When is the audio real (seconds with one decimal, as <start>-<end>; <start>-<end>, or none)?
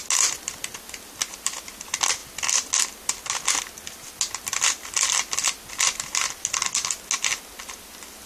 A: 0.0-8.3